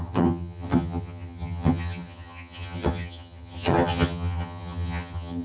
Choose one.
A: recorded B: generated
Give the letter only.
B